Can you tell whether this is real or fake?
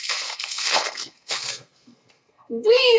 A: fake